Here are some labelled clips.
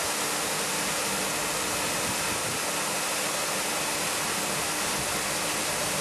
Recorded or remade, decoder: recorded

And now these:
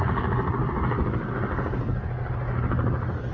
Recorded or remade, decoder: recorded